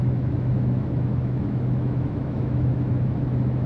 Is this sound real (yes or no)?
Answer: no